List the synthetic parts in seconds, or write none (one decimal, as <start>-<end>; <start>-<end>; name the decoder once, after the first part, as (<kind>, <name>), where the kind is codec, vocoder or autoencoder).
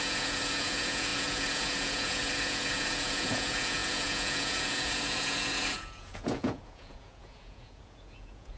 0.0-8.6 (vocoder, Vocos)